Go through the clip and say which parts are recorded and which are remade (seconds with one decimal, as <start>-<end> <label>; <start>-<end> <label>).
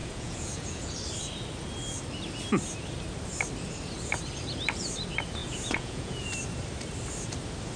0.0-0.9 remade; 0.9-5.4 recorded; 5.4-6.3 remade; 6.3-7.8 recorded